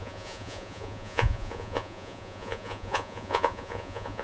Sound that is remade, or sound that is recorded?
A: remade